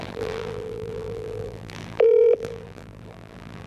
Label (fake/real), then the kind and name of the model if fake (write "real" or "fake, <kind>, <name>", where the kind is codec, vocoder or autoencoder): fake, vocoder, BigVGAN v2